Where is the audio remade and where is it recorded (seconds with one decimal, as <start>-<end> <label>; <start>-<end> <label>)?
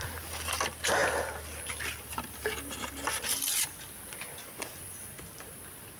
0.0-6.0 recorded